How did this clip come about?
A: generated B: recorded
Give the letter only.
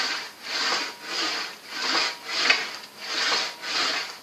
B